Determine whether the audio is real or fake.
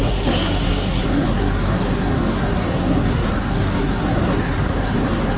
fake